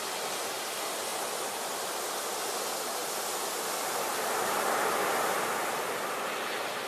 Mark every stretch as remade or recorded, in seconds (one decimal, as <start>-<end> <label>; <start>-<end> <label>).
0.0-1.1 recorded; 1.1-1.9 remade; 1.9-3.0 recorded; 3.0-6.3 remade; 6.3-6.9 recorded